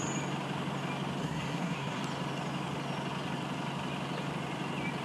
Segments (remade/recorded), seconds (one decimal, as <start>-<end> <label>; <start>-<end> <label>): 0.0-1.2 recorded; 1.2-2.0 remade; 2.0-5.0 recorded